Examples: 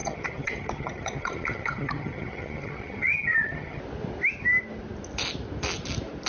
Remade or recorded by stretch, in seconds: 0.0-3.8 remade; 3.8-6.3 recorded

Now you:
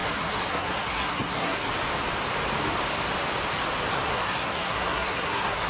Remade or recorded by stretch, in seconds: 0.0-1.7 remade; 1.7-3.9 recorded; 3.9-5.7 remade